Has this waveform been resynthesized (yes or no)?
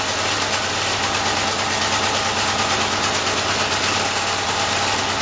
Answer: no